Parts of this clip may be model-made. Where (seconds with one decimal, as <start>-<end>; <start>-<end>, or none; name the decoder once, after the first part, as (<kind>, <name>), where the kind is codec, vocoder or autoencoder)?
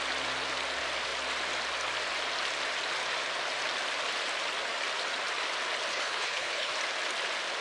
5.9-6.7 (codec, HILCodec)